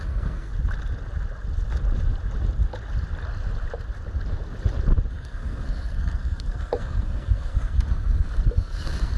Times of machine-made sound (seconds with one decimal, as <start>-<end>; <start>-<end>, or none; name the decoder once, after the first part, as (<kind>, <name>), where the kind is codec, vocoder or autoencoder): 0.0-0.5 (codec, SNAC); 5.1-9.2